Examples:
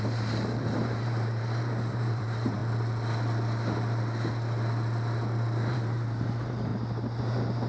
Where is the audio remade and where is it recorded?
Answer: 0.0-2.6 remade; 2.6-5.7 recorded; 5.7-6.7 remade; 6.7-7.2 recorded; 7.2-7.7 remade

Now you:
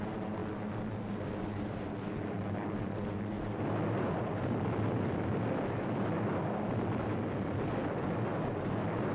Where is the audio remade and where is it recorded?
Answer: 0.0-9.1 recorded

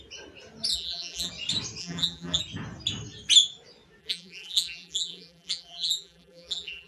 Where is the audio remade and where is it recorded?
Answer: 0.0-0.7 recorded; 0.7-1.3 remade; 1.3-1.8 recorded; 1.8-2.4 remade; 2.4-4.0 recorded; 4.0-6.9 remade

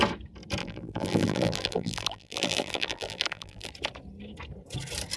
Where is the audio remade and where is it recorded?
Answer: 0.0-0.6 recorded; 0.6-3.7 remade; 3.7-5.2 recorded

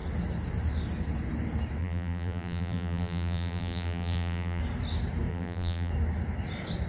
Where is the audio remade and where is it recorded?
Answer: 0.0-1.8 recorded; 1.8-4.6 remade; 4.6-5.3 recorded; 5.3-5.9 remade; 5.9-6.9 recorded

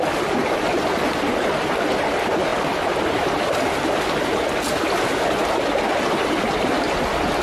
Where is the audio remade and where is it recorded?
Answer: 0.0-7.4 recorded

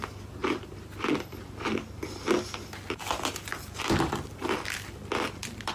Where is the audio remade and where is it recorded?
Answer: 0.0-0.4 recorded; 0.4-2.1 remade; 2.1-3.5 recorded; 3.5-5.7 remade

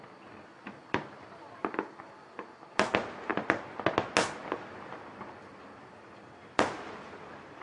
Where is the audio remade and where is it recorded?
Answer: 0.0-0.8 recorded; 0.8-2.0 remade; 2.0-4.4 recorded; 4.4-7.6 remade